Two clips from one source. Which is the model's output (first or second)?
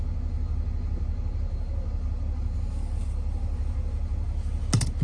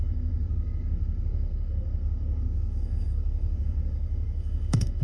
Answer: second